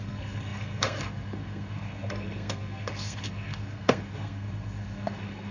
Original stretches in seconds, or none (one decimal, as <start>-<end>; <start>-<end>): none